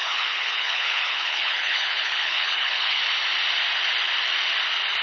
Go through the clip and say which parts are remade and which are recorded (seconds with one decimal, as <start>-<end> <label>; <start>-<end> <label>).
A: 0.0-3.0 remade; 3.0-5.0 recorded